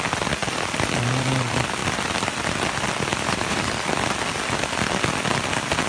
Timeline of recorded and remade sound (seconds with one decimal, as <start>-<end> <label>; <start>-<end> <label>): 0.0-3.1 recorded; 3.1-3.7 remade; 3.7-5.9 recorded